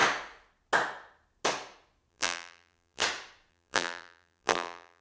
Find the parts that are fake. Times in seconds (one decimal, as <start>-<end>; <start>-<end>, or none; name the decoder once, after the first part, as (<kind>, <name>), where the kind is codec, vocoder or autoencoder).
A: 2.1-3.0 (vocoder, BigVGAN v2); 3.5-5.0